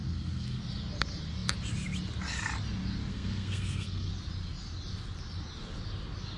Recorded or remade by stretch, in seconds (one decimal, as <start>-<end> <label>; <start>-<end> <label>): 0.0-0.6 remade; 0.6-3.1 recorded; 3.1-4.1 remade; 4.1-6.4 recorded